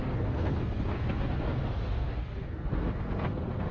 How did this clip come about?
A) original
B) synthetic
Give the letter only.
B